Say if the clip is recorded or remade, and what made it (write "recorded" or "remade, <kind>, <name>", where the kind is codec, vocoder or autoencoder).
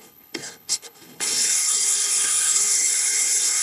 remade, codec, HILCodec